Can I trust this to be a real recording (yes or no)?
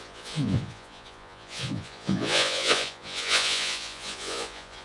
no